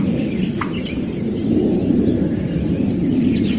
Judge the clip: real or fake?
fake